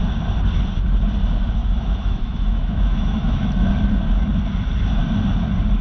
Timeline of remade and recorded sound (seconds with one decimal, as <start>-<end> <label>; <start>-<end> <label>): 0.0-1.6 recorded; 1.6-3.7 remade; 3.7-5.8 recorded